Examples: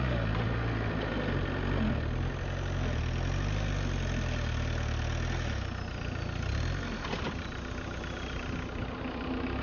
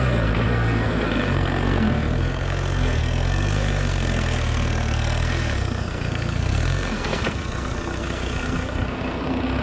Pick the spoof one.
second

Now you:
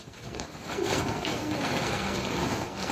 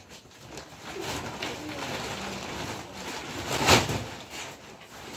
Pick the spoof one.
first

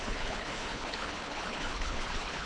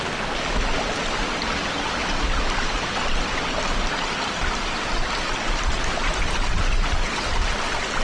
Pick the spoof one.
first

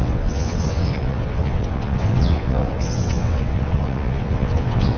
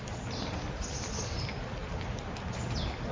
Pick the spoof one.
first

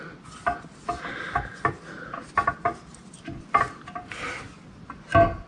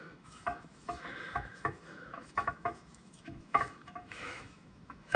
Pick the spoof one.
second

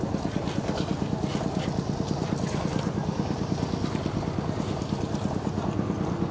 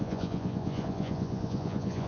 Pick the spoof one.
second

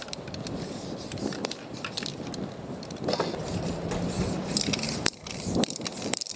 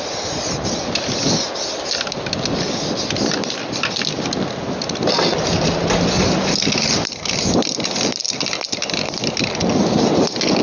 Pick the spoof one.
first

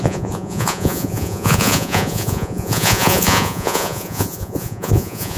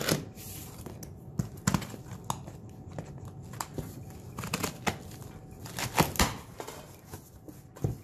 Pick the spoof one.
first